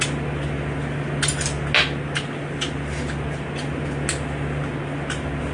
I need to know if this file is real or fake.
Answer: real